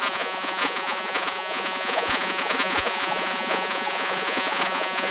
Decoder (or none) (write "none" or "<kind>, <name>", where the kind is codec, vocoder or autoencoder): vocoder, Vocos